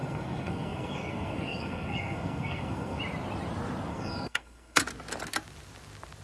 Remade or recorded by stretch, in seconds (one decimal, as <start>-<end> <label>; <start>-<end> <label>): 0.0-3.0 remade; 3.0-3.9 recorded; 3.9-4.8 remade; 4.8-6.2 recorded